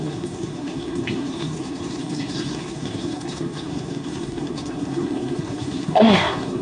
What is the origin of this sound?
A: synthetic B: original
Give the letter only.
A